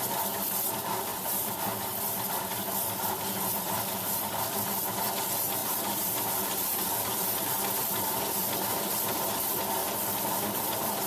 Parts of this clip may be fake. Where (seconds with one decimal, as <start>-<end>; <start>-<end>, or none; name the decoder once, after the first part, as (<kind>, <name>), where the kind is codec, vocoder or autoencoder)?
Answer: 1.1-4.3 (vocoder, BigVGAN v2); 5.6-9.2; 9.8-11.1